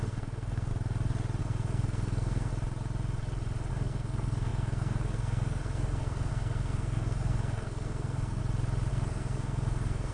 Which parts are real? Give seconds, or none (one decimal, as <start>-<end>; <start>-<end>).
0.7-1.4; 2.5-3.7; 8.4-8.9